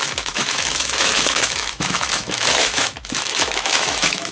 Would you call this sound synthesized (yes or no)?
yes